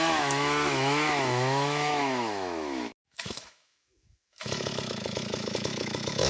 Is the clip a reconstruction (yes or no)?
yes